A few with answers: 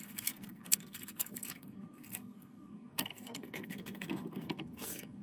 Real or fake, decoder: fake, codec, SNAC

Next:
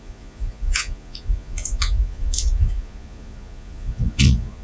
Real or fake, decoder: fake, vocoder, Vocos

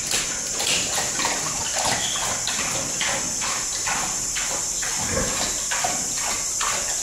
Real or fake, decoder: real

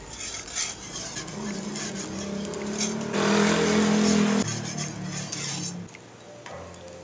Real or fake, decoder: real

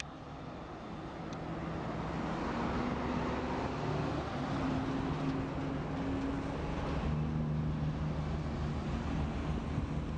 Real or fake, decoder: real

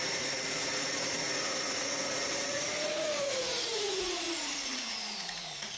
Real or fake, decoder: fake, vocoder, Vocos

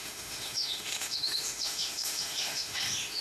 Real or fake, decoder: fake, autoencoder, DAC-VAE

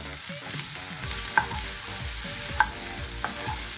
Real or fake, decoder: real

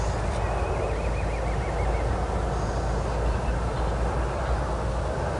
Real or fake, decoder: real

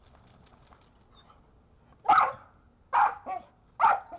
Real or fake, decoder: real